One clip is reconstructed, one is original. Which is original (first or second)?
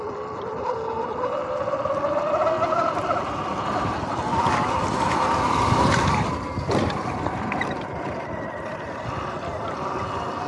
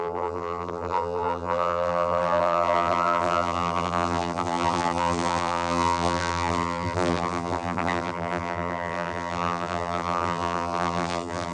first